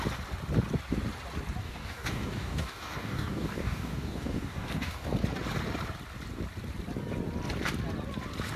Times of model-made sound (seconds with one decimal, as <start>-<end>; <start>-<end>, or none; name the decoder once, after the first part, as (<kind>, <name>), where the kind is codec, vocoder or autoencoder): 1.6-5.1 (codec, DAC)